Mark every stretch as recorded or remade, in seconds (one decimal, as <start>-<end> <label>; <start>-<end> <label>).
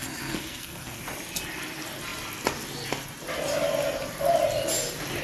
0.0-1.0 remade; 1.0-5.2 recorded